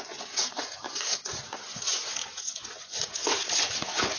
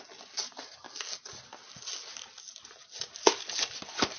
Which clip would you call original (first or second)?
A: second